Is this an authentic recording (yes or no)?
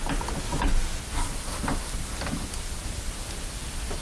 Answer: yes